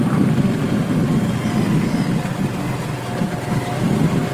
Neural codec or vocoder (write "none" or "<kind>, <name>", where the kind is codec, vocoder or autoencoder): none